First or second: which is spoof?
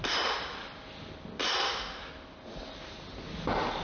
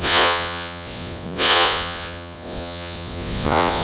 second